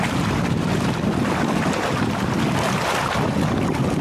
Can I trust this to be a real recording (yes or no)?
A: yes